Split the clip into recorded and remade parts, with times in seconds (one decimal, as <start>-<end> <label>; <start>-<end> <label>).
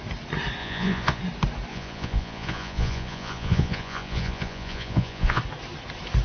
0.0-0.6 recorded; 0.6-1.2 remade; 1.2-1.7 recorded; 1.7-5.4 remade; 5.4-6.2 recorded